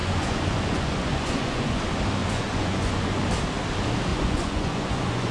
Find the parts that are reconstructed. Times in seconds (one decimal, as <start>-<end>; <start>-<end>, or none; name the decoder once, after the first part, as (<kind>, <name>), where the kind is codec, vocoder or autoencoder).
0.0-1.8 (vocoder, Vocos); 2.2-3.2; 4.1-5.3